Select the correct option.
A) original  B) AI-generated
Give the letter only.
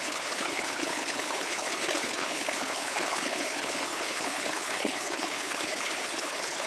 B